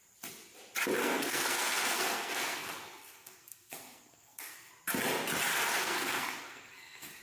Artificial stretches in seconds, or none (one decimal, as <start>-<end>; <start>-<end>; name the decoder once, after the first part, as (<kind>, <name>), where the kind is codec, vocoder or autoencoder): 1.0-4.7 (codec, SNAC); 5.5-7.2